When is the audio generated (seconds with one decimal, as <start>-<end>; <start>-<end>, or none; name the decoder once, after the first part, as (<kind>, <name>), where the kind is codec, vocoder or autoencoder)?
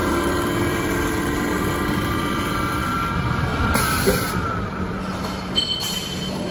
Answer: 0.0-1.2 (vocoder, BigVGAN v2)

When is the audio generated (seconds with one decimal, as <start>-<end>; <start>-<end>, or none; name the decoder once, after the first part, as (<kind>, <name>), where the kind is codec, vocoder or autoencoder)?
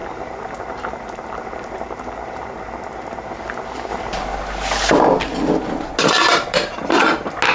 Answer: 0.0-3.3 (vocoder, BigVGAN v2); 6.0-7.0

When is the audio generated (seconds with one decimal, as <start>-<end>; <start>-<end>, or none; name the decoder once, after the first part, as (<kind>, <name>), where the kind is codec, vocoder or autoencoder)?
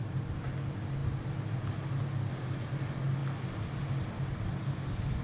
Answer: none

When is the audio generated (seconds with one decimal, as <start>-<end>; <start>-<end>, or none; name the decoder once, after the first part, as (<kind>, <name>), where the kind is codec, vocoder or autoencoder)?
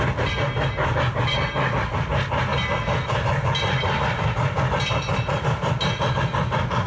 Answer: none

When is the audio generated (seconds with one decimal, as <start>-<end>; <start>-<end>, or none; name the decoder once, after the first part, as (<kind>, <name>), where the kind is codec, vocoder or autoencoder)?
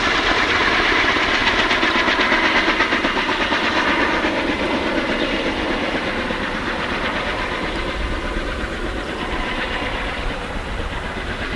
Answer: none